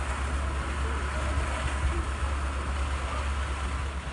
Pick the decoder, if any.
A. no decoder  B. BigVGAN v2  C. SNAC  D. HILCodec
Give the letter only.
A